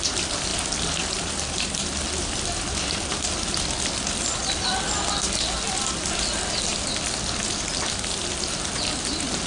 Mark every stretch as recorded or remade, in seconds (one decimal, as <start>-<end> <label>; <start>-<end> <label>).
0.0-9.5 recorded